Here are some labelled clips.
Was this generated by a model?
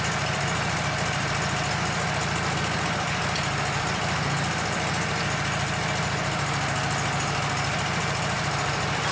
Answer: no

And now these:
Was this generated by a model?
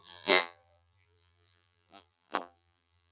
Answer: yes